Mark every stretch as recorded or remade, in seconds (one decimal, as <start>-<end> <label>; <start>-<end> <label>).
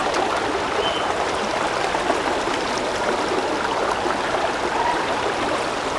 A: 0.0-6.0 recorded